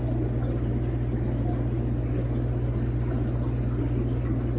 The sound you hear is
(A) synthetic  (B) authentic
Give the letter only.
B